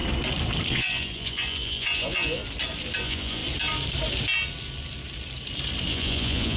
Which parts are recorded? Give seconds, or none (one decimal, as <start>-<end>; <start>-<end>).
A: 0.0-0.7; 2.4-3.0; 3.4-5.9